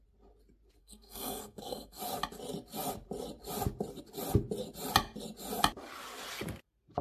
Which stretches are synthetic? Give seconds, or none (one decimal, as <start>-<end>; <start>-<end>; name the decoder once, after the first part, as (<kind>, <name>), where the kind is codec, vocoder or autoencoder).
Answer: 0.8-2.0 (codec, SNAC)